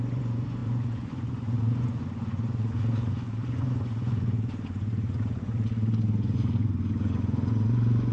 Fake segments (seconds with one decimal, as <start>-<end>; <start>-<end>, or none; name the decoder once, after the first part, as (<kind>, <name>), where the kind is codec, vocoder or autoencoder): 0.0-8.1 (vocoder, Vocos)